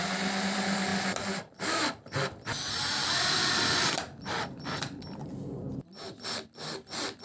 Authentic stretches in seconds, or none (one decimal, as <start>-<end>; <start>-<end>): 0.0-7.2